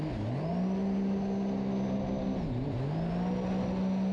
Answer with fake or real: real